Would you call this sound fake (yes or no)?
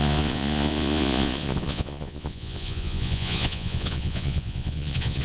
yes